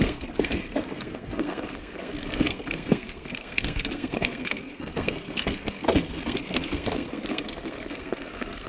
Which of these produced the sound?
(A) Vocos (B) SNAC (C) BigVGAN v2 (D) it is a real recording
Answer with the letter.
B